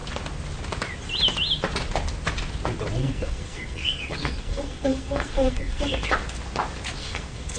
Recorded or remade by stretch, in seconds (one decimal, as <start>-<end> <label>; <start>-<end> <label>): 0.0-3.0 recorded; 3.0-6.1 remade; 6.1-7.0 recorded; 7.0-7.6 remade